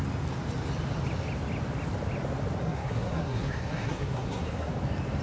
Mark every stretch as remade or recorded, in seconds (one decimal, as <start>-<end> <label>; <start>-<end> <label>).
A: 0.0-2.6 recorded; 2.6-4.7 remade; 4.7-5.2 recorded